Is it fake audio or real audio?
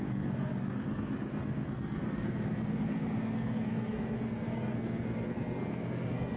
fake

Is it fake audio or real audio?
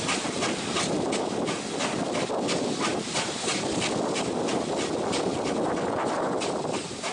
real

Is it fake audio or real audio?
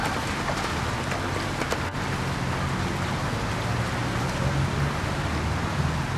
real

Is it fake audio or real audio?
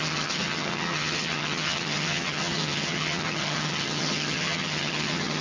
fake